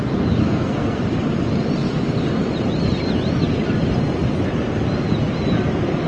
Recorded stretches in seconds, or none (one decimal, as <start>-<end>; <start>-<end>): 0.0-0.4; 1.0-6.1